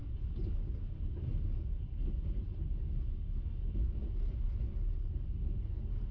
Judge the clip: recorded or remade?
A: recorded